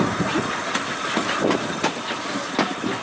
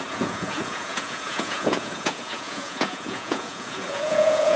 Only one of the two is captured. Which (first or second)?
first